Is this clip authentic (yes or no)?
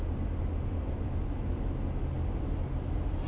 yes